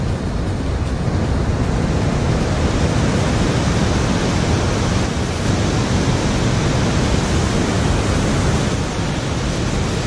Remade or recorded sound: recorded